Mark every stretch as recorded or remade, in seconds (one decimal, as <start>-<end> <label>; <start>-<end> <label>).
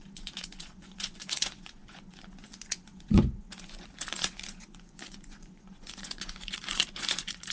0.0-7.5 remade